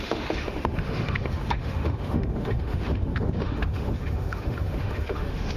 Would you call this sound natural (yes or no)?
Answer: no